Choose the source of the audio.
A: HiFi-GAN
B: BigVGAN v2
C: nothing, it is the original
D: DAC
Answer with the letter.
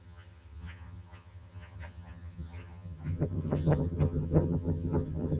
A